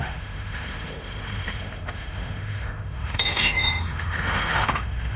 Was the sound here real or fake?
fake